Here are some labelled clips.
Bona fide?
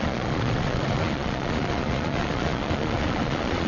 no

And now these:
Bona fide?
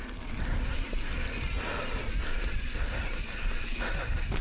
yes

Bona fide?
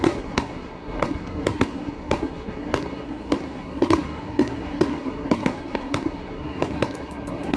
no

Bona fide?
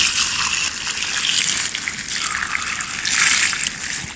yes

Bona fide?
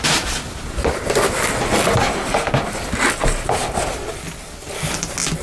yes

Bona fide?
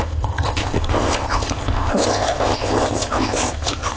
no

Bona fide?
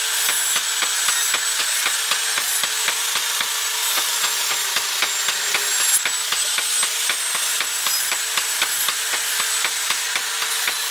yes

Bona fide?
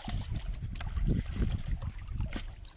yes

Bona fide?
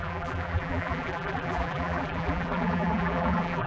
no